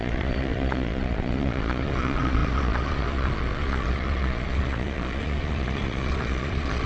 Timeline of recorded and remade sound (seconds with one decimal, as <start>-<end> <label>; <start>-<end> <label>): 0.0-6.9 remade